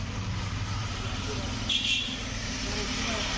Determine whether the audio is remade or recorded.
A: recorded